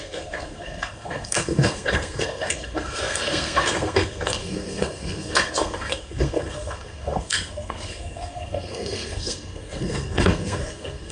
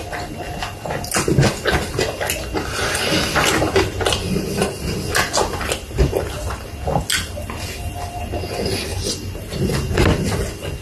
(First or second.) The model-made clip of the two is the first